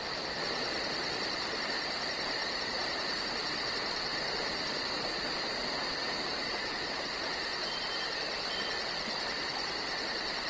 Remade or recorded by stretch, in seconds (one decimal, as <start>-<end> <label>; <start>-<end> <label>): 0.0-2.4 recorded; 2.4-3.2 remade; 3.2-4.1 recorded; 4.1-7.1 remade; 7.1-10.5 recorded